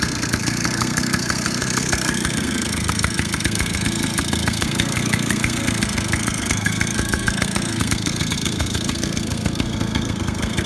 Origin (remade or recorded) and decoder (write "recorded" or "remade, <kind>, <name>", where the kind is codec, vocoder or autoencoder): remade, codec, SNAC